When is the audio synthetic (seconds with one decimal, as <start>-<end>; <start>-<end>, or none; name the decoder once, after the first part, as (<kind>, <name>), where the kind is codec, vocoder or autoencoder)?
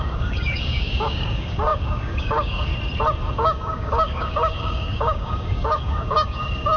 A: 0.0-2.7 (codec, DAC); 3.3-6.8